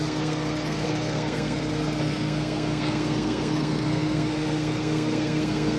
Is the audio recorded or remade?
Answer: remade